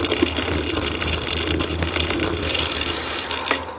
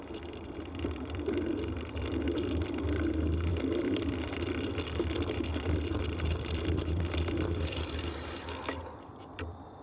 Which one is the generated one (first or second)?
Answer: second